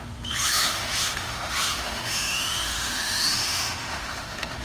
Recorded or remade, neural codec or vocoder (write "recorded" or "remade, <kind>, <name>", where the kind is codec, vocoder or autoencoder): remade, autoencoder, DAC-VAE